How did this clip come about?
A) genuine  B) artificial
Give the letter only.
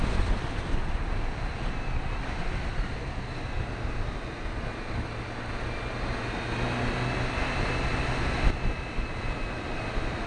A